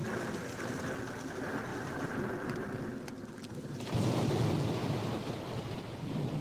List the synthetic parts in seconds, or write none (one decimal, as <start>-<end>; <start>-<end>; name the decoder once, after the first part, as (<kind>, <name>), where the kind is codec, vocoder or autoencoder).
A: 0.0-0.8 (vocoder, BigVGAN v2); 1.7-4.3; 4.8-5.9